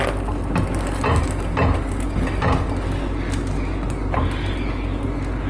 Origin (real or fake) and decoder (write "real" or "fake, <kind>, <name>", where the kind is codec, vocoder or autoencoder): real